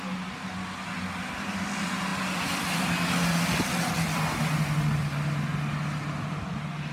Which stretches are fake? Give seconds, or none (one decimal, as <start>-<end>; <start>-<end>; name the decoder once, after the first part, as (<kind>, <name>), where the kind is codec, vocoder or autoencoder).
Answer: none

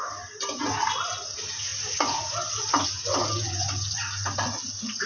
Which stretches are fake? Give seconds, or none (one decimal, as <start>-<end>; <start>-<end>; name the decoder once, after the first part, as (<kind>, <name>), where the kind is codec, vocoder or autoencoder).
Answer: none

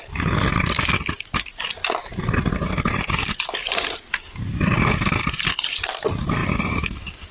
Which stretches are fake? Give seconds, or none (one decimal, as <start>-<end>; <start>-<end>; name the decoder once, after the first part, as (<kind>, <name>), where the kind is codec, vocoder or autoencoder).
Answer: none

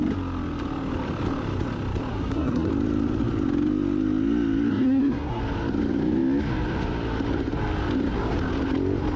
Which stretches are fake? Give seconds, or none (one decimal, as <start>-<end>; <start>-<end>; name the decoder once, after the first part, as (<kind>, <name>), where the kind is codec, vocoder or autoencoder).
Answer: 2.1-2.7 (codec, SNAC); 4.7-5.4

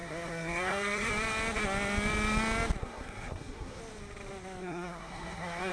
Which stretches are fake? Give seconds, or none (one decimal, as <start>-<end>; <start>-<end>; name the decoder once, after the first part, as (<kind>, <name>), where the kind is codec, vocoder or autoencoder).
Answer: 0.0-1.1 (codec, SNAC); 2.8-3.8; 4.6-5.7

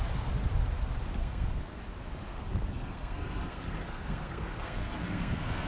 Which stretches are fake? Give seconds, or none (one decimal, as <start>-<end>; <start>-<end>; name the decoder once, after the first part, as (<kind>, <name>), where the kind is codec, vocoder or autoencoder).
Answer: 1.2-1.8 (codec, SNAC); 2.3-5.7